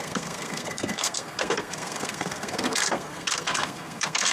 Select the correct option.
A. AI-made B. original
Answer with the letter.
A